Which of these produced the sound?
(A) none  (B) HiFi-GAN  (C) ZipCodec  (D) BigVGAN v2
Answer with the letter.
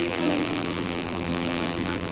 D